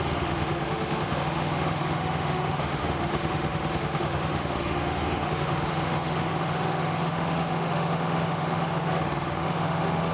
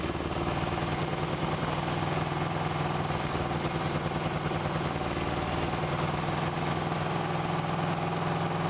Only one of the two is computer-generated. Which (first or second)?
first